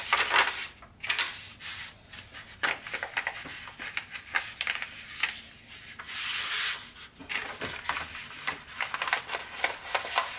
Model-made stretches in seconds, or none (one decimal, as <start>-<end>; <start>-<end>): none